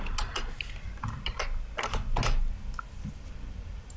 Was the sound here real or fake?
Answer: real